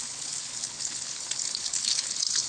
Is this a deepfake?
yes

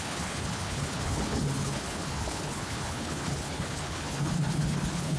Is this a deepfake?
yes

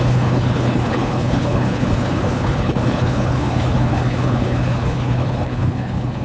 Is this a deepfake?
yes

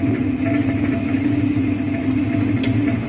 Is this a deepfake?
no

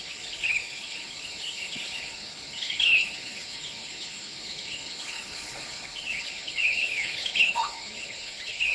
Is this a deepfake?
yes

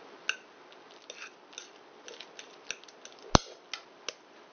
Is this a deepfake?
no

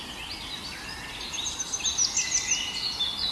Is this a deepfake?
no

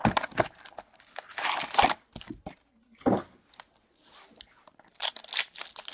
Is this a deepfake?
no